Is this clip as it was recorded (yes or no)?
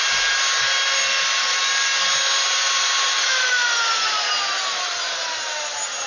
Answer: yes